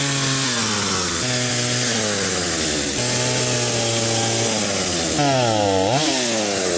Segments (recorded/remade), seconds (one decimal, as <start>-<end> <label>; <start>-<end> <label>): 0.0-6.8 recorded